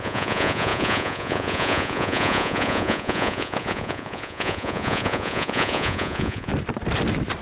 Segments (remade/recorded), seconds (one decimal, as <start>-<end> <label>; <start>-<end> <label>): 0.0-6.5 remade; 6.5-7.4 recorded